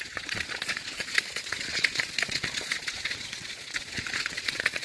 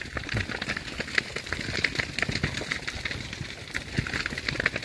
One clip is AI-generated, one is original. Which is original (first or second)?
second